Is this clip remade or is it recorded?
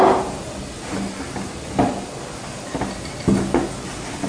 recorded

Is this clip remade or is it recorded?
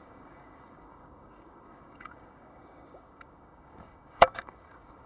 remade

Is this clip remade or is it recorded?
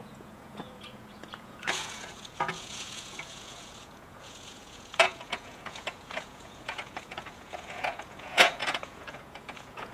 remade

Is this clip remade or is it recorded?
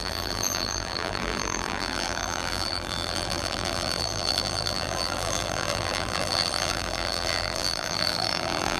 remade